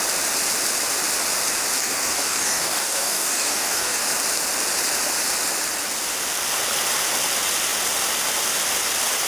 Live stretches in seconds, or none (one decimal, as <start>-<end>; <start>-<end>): 0.0-1.8; 4.0-9.3